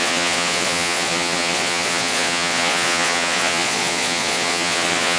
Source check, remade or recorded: remade